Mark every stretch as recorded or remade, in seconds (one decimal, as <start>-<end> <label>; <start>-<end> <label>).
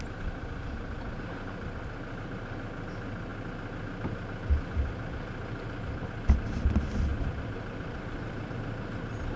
0.0-7.1 recorded; 7.1-8.6 remade; 8.6-9.4 recorded